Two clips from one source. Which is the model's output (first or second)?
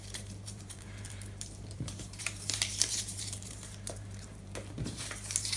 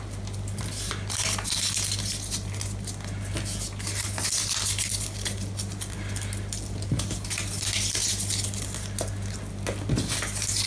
first